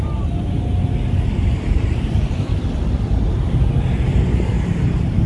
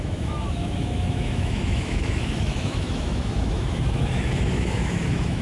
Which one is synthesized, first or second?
second